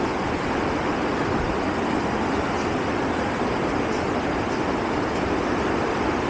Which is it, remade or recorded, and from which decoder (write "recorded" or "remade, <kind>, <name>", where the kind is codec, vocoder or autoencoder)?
recorded